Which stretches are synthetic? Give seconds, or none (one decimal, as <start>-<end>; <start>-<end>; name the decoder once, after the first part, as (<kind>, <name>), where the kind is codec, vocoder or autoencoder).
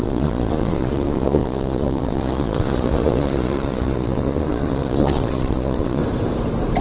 0.0-6.0 (vocoder, Vocos)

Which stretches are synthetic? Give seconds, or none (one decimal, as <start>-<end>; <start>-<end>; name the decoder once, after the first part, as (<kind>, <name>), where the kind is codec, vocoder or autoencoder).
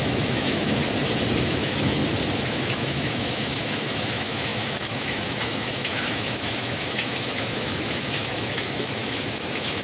0.0-0.8 (autoencoder, DAC-VAE); 1.4-2.0; 2.5-9.8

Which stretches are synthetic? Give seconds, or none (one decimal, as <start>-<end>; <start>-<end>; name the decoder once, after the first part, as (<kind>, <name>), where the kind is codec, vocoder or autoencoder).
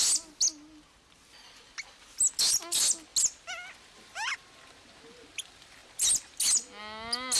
none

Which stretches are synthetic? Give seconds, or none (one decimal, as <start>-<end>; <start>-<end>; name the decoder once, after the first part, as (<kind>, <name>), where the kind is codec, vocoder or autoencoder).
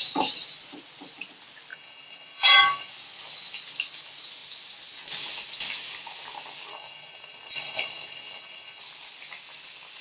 1.7-2.9 (autoencoder, DAC-VAE); 6.7-8.8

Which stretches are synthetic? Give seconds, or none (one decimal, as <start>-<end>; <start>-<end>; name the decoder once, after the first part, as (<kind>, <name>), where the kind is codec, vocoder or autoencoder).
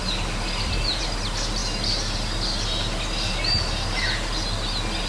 none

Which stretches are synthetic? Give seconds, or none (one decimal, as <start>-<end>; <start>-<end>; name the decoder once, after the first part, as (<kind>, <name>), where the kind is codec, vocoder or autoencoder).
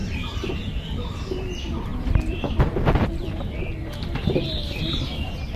0.0-0.5 (vocoder, BigVGAN v2)